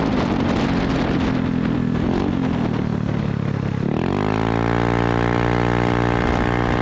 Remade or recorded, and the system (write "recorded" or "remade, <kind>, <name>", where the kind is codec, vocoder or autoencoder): recorded